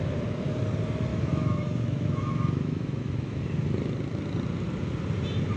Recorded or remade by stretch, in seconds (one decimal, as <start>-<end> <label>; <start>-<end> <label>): 0.0-1.1 recorded; 1.1-3.4 remade; 3.4-5.6 recorded